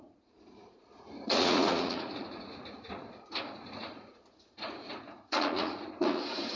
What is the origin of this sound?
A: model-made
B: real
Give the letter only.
A